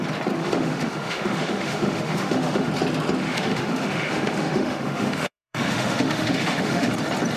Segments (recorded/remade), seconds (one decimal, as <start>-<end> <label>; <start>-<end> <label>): 0.0-0.4 recorded; 0.4-2.7 remade; 2.7-3.2 recorded; 3.2-6.9 remade; 6.9-7.4 recorded